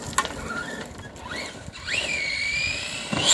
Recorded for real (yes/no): yes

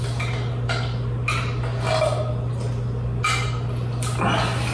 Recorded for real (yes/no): yes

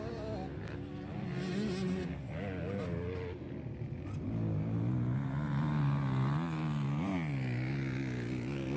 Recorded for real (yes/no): yes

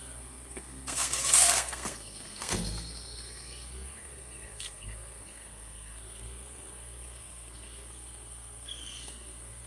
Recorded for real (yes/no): no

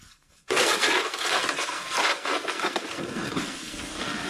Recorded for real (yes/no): no